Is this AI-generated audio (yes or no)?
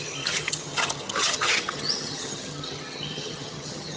yes